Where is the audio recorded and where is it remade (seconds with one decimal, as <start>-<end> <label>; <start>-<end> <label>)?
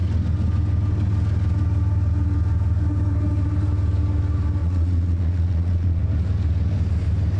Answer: 0.0-4.6 recorded; 4.6-6.0 remade; 6.0-7.4 recorded